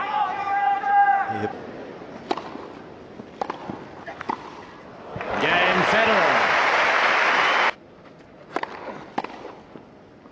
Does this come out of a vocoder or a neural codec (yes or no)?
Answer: no